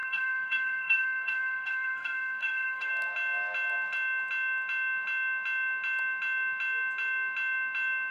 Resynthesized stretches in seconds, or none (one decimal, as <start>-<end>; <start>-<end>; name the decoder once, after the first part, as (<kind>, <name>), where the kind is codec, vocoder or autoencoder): 0.0-2.9 (codec, SNAC)